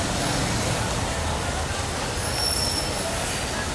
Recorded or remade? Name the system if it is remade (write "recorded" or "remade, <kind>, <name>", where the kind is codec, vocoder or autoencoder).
recorded